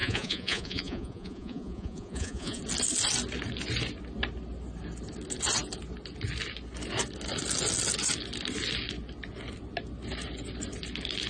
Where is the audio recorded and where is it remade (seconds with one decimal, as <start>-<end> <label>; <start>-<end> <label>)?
0.0-2.6 remade; 2.6-11.3 recorded